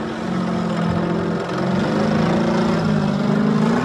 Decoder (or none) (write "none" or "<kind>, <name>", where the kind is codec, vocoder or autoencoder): none